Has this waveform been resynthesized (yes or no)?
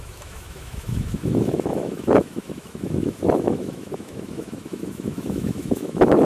yes